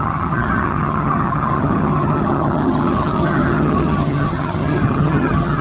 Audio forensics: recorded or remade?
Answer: remade